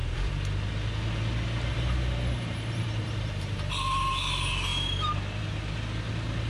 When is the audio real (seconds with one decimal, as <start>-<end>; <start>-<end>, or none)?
0.0-1.7; 4.1-6.5